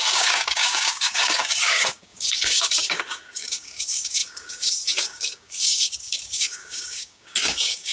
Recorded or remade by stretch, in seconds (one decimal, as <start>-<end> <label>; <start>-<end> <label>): 0.0-7.9 remade